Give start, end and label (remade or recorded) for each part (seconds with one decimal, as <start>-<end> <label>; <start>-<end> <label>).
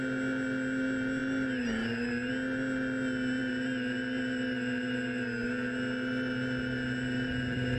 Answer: 0.0-1.2 recorded; 1.2-2.3 remade; 2.3-3.4 recorded; 3.4-7.8 remade